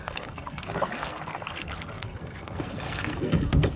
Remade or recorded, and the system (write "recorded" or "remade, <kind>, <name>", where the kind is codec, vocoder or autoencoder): remade, codec, SNAC